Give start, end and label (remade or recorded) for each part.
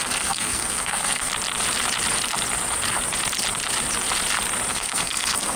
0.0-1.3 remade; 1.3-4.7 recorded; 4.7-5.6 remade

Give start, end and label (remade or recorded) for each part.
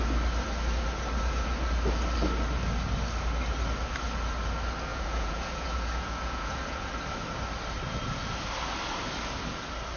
0.0-4.9 recorded; 4.9-6.9 remade; 6.9-10.0 recorded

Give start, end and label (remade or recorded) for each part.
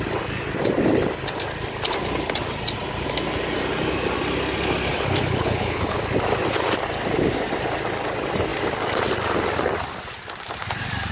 0.0-4.9 recorded; 4.9-6.0 remade; 6.0-11.1 recorded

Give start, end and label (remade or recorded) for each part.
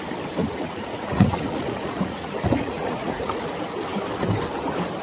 0.0-0.4 recorded; 0.4-3.4 remade; 3.4-5.0 recorded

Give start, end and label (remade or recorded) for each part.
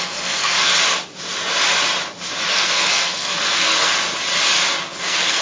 0.0-0.7 remade; 0.7-2.5 recorded; 2.5-3.9 remade; 3.9-5.0 recorded; 5.0-5.4 remade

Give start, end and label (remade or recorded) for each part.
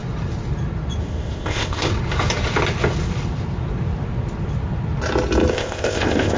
0.0-1.0 recorded; 1.0-1.9 remade; 1.9-5.5 recorded; 5.5-6.4 remade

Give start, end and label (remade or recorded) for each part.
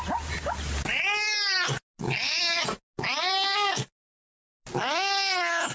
0.0-5.7 recorded